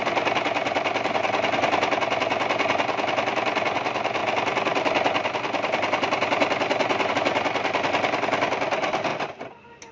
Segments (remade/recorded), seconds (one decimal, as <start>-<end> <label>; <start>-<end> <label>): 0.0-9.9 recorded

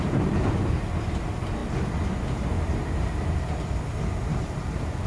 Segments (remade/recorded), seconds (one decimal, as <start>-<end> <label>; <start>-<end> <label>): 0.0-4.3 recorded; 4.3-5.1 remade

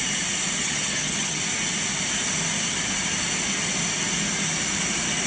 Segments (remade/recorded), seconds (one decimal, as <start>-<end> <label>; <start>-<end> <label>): 0.0-0.6 recorded; 0.6-1.4 remade; 1.4-5.3 recorded